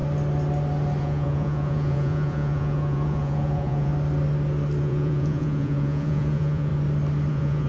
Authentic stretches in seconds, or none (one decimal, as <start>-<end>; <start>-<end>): 0.0-1.0; 3.9-4.8; 6.7-7.3